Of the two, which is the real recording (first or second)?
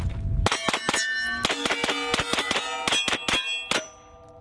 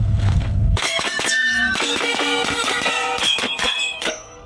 first